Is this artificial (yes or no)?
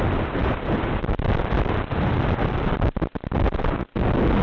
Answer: no